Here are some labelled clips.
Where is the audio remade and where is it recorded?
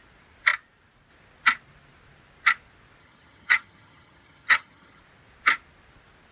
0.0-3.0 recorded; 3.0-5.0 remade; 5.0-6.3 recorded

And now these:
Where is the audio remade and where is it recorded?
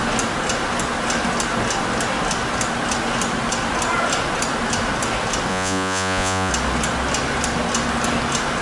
0.0-5.5 recorded; 5.5-6.5 remade; 6.5-8.6 recorded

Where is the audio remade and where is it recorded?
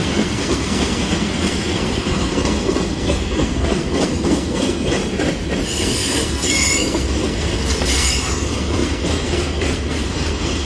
0.0-5.0 remade; 5.0-5.7 recorded; 5.7-10.7 remade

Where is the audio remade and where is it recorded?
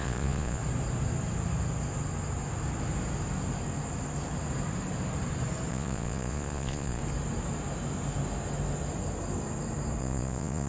0.0-0.6 remade; 0.6-5.7 recorded; 5.7-7.0 remade; 7.0-10.0 recorded; 10.0-10.7 remade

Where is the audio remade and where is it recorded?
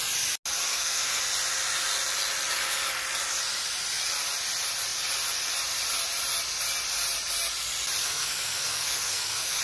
0.0-0.7 recorded; 0.7-1.2 remade; 1.2-8.0 recorded; 8.0-9.6 remade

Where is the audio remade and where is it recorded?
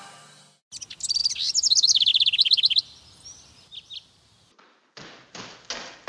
0.0-6.1 recorded